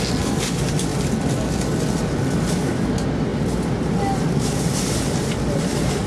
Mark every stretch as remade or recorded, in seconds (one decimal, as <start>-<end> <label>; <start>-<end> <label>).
0.0-6.1 recorded